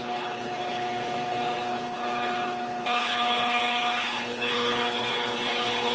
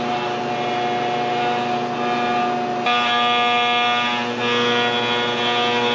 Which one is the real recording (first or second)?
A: second